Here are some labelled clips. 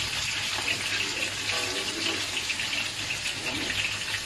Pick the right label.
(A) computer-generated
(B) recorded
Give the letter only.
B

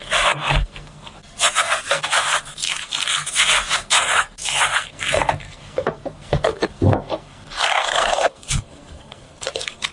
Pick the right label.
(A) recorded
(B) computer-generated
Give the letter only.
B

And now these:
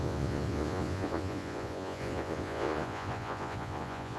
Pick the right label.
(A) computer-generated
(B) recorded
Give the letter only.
A